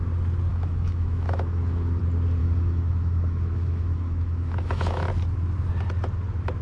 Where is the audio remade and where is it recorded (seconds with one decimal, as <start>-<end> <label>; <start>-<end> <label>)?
0.0-0.5 recorded; 0.5-2.0 remade; 2.0-2.4 recorded; 2.4-5.1 remade; 5.1-6.6 recorded